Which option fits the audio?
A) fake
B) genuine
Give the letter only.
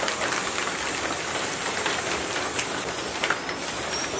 B